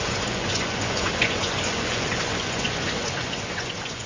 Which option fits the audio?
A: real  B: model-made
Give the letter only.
B